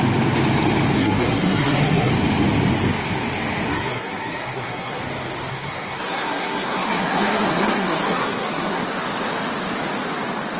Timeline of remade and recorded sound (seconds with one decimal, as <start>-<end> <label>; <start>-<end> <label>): 0.0-1.0 recorded; 1.0-2.1 remade; 2.1-3.7 recorded; 3.7-5.0 remade; 5.0-5.5 recorded; 5.5-8.8 remade; 8.8-10.6 recorded